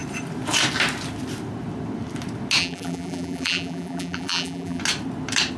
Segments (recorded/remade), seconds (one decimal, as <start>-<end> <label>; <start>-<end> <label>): 0.0-2.6 recorded; 2.6-4.8 remade; 4.8-5.6 recorded